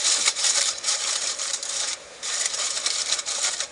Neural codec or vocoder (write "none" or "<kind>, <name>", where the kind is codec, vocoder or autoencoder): vocoder, BigVGAN v2